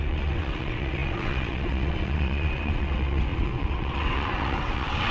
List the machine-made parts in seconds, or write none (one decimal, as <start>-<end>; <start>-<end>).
0.0-5.1